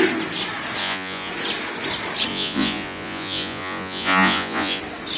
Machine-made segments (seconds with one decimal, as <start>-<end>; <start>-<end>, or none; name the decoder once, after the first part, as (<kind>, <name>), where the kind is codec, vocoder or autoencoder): 0.8-1.3 (vocoder, Vocos); 2.3-4.8